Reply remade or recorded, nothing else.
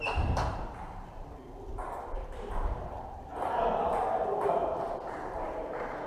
remade